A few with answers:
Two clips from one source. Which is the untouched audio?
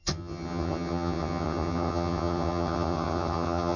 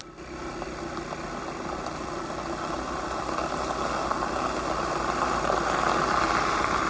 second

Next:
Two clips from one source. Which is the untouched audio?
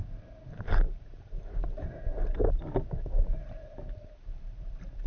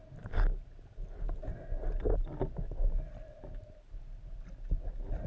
second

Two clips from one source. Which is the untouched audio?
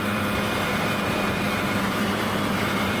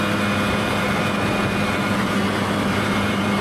second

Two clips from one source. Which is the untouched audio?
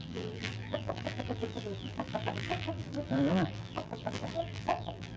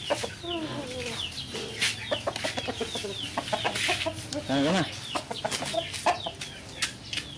second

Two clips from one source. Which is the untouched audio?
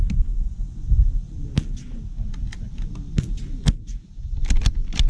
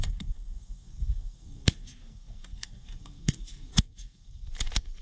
first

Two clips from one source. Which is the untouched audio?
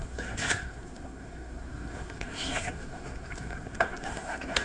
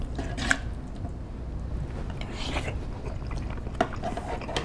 second